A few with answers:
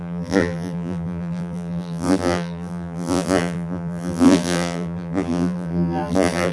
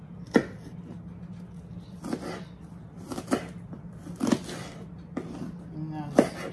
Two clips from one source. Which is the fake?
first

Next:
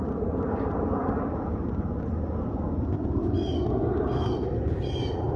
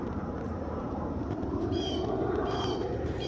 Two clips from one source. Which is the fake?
second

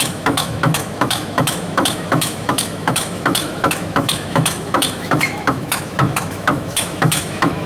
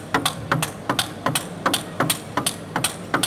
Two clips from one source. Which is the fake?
first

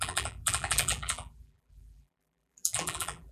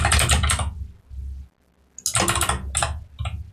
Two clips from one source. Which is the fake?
first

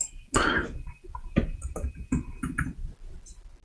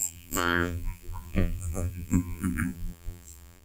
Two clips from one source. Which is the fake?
second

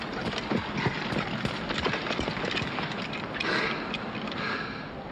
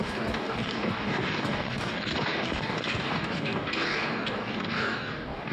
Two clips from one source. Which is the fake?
second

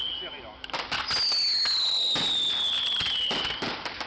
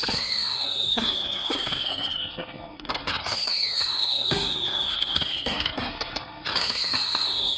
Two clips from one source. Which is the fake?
second